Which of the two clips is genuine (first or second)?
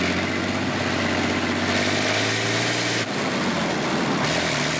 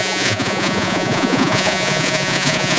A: first